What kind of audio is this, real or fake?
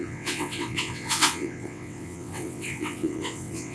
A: fake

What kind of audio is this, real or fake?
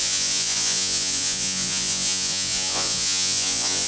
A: fake